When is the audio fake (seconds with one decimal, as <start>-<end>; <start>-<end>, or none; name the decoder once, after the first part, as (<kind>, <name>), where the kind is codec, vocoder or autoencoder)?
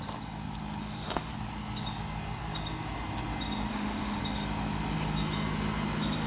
0.8-1.3 (autoencoder, DAC-VAE); 3.7-4.2